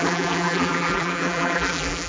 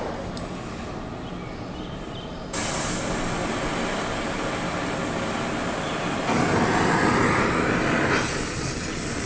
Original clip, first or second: second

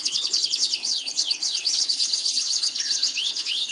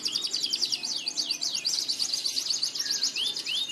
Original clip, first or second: second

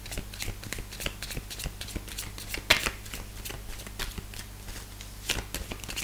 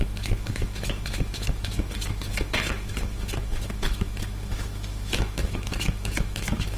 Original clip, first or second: first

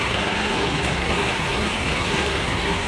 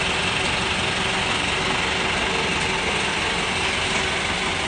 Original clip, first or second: second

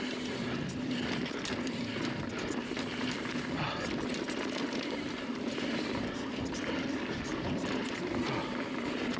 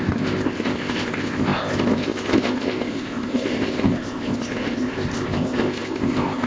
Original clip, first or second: first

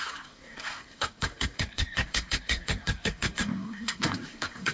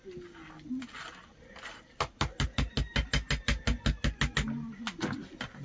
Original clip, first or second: second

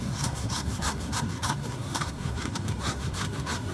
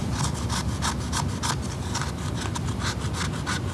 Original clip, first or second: second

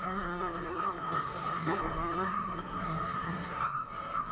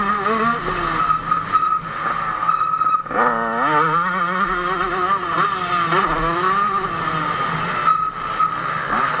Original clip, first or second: second